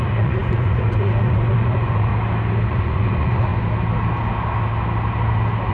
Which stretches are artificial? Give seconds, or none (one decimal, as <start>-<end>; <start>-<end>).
0.0-2.1; 2.7-3.5